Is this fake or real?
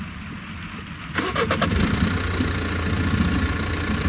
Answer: real